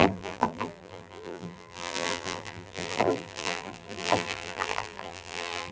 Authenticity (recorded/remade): remade